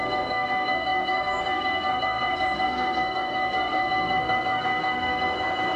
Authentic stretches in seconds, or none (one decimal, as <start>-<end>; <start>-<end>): none